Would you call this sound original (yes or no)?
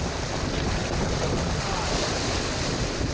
yes